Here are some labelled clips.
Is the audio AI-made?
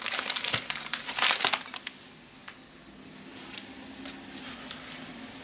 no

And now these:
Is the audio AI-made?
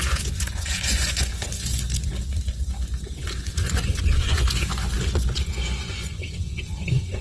yes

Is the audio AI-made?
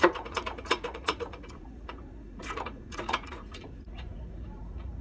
yes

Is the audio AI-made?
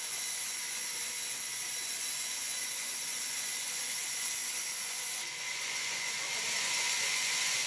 yes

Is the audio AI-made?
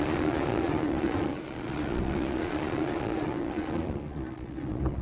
yes